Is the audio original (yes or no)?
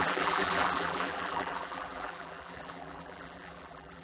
no